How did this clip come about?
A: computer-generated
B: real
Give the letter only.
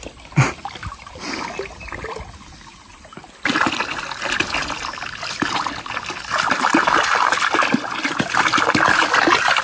B